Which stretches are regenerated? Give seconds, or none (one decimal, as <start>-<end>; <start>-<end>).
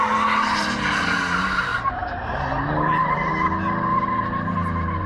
1.7-3.3